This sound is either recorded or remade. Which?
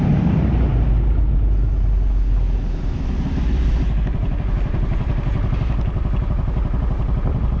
recorded